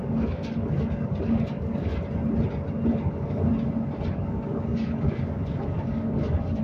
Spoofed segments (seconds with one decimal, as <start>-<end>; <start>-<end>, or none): 0.0-1.9; 2.9-3.5; 4.1-6.6